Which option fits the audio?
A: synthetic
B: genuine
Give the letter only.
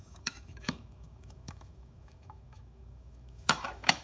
A